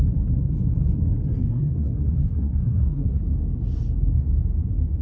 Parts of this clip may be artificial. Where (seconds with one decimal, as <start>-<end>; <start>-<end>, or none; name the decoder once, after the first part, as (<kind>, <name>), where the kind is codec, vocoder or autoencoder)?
1.4-3.2 (codec, SNAC)